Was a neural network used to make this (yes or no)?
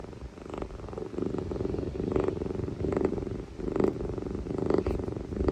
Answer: no